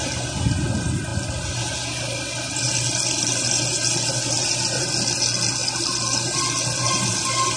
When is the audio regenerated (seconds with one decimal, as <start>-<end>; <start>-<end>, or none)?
none